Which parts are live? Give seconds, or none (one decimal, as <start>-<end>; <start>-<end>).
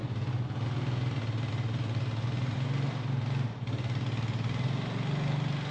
0.0-5.7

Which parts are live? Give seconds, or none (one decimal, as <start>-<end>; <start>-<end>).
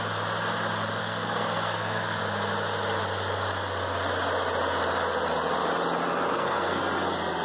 0.0-1.0; 2.2-6.3; 6.8-7.4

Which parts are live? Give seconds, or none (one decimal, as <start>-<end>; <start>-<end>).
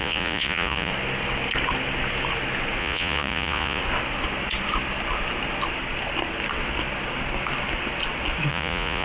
0.9-2.8; 3.8-8.5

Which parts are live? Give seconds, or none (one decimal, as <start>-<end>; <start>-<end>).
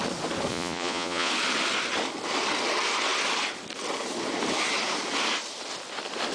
0.0-0.5; 1.3-6.3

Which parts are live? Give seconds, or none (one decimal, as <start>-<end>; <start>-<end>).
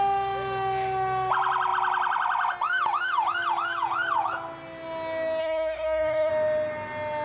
0.0-5.4; 6.3-7.2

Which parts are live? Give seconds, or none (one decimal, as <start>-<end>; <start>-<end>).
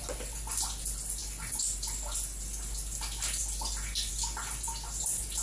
0.0-5.4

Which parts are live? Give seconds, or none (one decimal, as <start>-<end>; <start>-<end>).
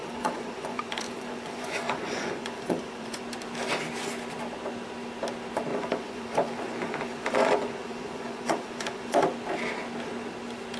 3.2-5.7; 9.2-10.8